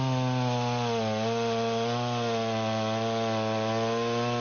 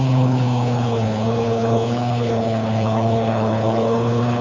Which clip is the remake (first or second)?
second